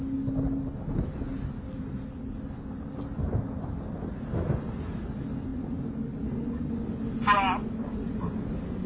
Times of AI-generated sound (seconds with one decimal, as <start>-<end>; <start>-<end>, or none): none